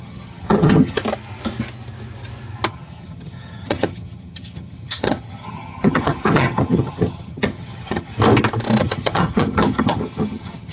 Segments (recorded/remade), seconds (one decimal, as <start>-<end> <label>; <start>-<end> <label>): 0.0-1.0 remade; 1.0-2.7 recorded; 2.7-8.1 remade; 8.1-8.8 recorded; 8.8-10.7 remade